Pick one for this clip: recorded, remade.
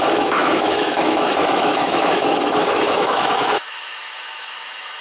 remade